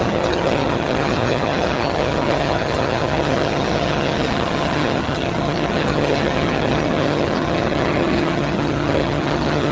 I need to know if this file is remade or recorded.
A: remade